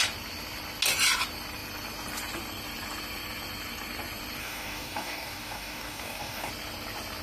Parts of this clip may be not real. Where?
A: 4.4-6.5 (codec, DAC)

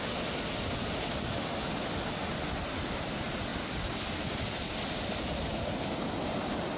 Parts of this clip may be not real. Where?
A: none

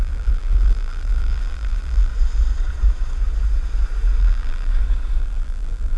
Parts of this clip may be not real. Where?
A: 0.0-2.1 (vocoder, BigVGAN v2); 4.2-4.7; 5.2-6.0

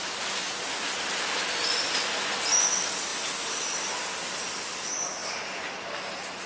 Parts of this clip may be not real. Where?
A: none

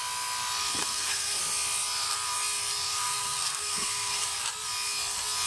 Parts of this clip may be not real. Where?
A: 0.8-1.4 (codec, SNAC); 2.9-4.2

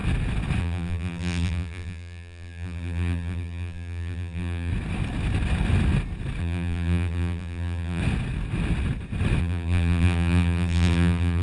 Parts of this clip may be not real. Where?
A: 0.6-4.7 (vocoder, BigVGAN v2); 6.4-8.0; 9.4-11.4